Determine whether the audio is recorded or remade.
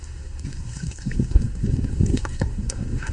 remade